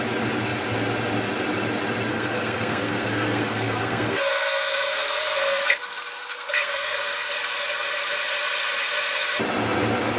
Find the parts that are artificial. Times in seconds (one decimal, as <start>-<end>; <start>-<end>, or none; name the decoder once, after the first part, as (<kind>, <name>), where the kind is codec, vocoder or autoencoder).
2.1-5.8 (codec, SNAC); 6.2-7.3